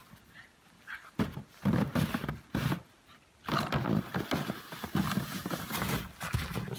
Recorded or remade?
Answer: recorded